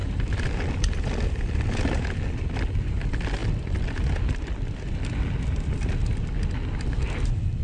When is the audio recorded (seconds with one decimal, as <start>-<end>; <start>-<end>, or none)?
1.8-7.6